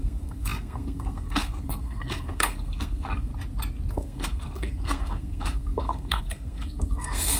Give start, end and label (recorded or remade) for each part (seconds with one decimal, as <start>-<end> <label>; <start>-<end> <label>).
0.0-3.3 remade; 3.3-3.9 recorded; 3.9-7.4 remade